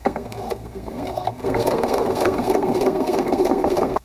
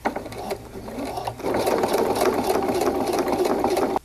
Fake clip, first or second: first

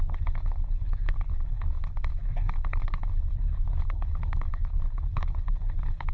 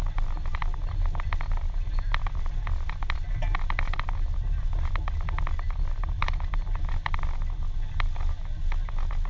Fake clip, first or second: first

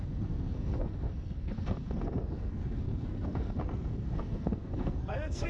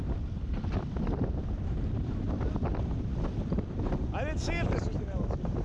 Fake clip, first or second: first